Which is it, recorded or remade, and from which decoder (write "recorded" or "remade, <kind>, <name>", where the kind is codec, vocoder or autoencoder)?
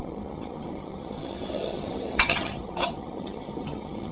remade, vocoder, HiFi-GAN